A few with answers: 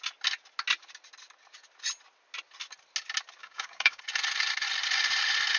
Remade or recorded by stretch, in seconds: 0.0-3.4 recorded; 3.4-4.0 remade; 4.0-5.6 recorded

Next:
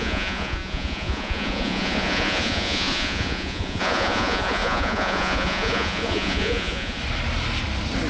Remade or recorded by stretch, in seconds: 0.0-7.0 remade; 7.0-8.1 recorded

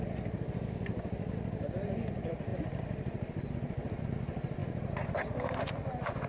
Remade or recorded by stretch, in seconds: 0.0-6.3 recorded

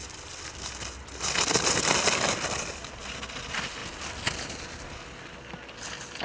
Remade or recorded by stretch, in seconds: 0.0-6.2 recorded

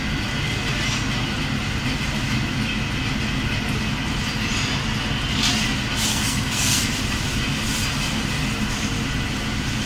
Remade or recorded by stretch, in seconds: 0.0-6.1 recorded; 6.1-6.9 remade; 6.9-9.9 recorded

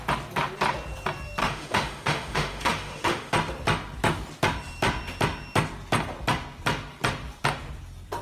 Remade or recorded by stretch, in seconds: 0.0-1.4 recorded; 1.4-3.3 remade; 3.3-8.2 recorded

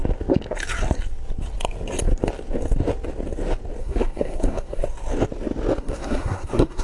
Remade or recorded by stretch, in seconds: 0.0-3.8 recorded; 3.8-4.8 remade; 4.8-5.8 recorded; 5.8-6.8 remade